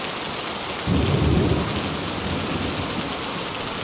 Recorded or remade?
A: recorded